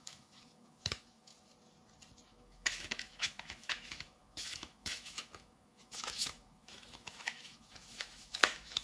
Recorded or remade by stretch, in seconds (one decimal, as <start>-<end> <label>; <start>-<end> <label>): 0.0-1.3 remade; 1.3-2.3 recorded; 2.3-8.8 remade